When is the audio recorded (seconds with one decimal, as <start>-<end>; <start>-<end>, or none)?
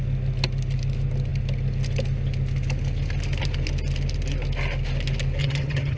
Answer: 0.0-5.4